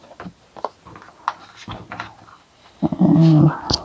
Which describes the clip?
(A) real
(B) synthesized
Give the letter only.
A